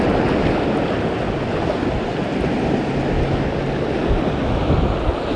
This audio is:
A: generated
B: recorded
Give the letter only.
B